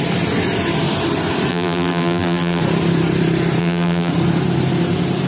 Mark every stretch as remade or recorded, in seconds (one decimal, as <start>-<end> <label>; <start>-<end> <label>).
0.0-1.5 recorded; 1.5-2.6 remade; 2.6-3.6 recorded; 3.6-4.1 remade; 4.1-5.3 recorded